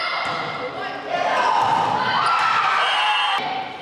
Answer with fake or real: real